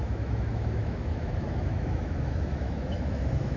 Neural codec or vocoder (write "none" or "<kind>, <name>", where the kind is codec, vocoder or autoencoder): autoencoder, DAC-VAE